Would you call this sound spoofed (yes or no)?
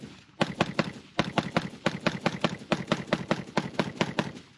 no